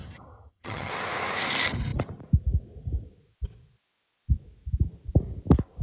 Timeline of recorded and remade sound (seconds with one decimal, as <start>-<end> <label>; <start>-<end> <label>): 0.0-0.9 remade; 0.9-5.8 recorded